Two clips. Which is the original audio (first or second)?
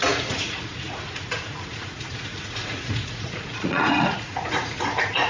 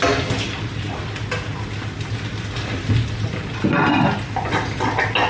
second